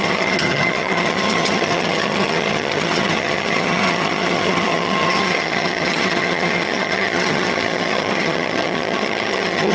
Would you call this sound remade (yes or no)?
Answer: yes